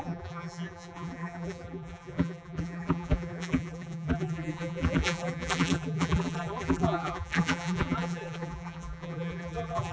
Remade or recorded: remade